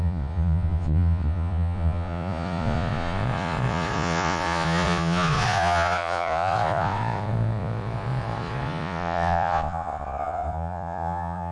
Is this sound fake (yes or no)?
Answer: yes